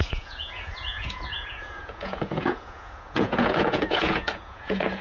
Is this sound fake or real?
fake